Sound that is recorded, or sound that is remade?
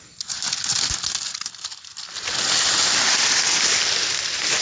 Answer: recorded